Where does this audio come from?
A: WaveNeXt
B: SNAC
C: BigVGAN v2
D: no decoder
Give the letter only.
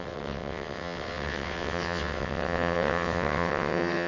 A